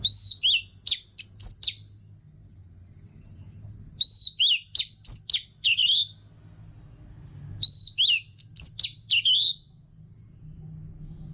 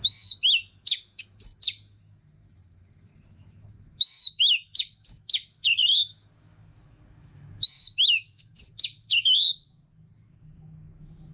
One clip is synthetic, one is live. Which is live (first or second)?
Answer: first